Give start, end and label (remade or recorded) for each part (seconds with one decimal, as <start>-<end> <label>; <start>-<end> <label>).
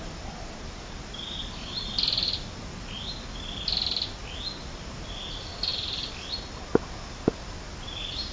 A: 0.0-8.3 recorded